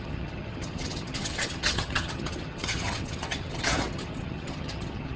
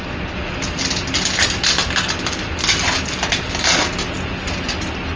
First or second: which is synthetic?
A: first